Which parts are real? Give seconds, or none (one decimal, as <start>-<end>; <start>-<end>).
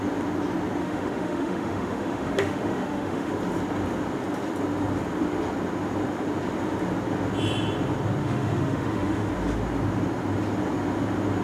0.0-0.8; 3.3-8.2; 9.3-11.4